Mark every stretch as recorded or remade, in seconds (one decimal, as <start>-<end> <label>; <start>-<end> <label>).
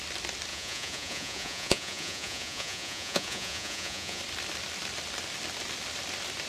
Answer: 0.0-0.5 recorded; 0.5-4.2 remade; 4.2-6.5 recorded